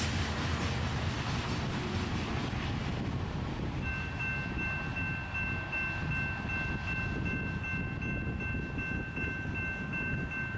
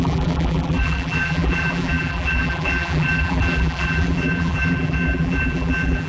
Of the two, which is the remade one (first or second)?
second